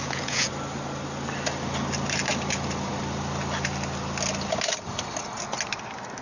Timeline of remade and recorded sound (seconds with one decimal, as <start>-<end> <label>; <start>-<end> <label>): 0.0-0.5 remade; 0.5-6.2 recorded